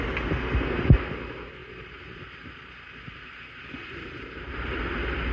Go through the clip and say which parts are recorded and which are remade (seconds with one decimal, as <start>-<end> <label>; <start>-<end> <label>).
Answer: 0.0-1.6 recorded; 1.6-4.8 remade; 4.8-5.3 recorded